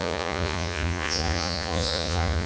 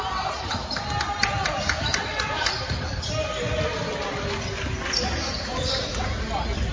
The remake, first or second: first